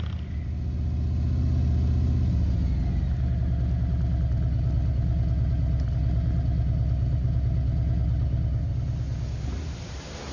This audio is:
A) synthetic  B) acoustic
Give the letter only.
B